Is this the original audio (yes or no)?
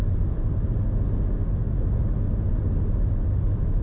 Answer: yes